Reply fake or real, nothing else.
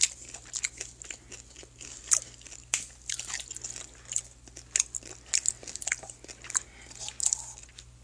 real